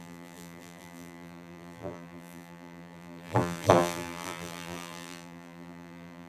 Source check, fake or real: fake